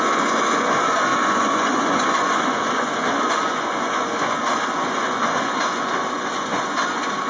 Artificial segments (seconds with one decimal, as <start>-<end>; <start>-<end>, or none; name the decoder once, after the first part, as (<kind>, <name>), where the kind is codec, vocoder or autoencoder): 0.0-7.3 (vocoder, Vocos)